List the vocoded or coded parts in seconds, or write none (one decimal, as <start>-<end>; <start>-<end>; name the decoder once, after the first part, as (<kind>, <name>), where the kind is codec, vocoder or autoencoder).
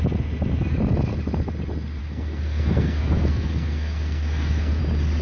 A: 2.0-4.8 (codec, SNAC)